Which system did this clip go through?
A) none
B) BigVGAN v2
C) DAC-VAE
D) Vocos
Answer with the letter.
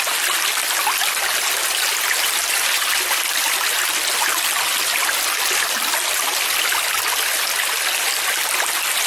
A